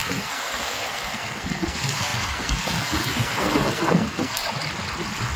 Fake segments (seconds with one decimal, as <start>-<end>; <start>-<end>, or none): 0.0-4.4